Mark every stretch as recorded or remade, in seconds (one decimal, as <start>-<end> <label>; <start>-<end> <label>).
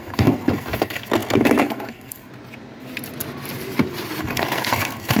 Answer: 0.0-2.3 remade; 2.3-4.2 recorded; 4.2-5.2 remade